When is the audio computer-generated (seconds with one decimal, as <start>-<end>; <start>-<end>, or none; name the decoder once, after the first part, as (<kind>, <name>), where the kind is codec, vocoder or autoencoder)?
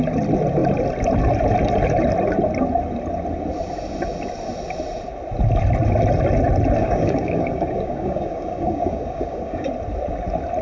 6.8-9.7 (codec, DAC)